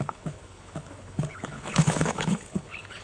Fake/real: fake